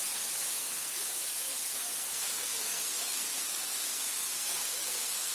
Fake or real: fake